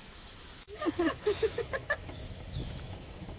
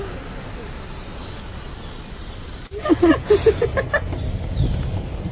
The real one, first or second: second